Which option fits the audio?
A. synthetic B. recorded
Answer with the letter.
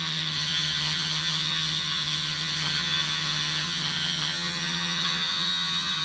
A